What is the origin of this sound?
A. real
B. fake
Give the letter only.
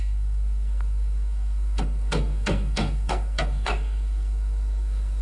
B